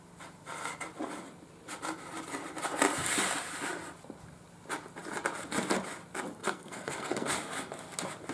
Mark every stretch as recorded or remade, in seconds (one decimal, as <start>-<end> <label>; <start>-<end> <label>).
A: 0.0-6.4 recorded; 6.4-7.3 remade; 7.3-8.3 recorded